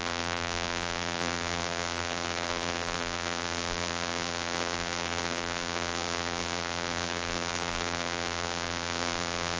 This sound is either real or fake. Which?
fake